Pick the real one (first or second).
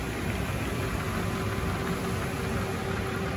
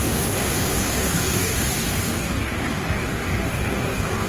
first